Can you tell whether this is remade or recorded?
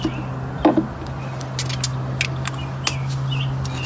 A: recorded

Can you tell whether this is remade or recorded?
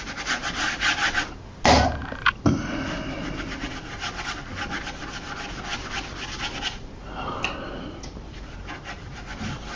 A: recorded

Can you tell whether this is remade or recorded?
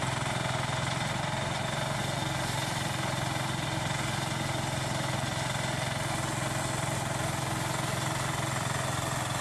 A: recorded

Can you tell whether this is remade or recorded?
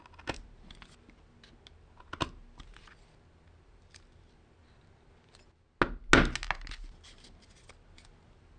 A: recorded